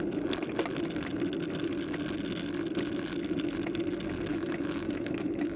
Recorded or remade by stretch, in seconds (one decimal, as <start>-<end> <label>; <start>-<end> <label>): 0.0-4.3 recorded; 4.3-5.6 remade